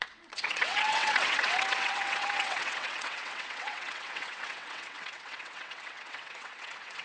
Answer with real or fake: fake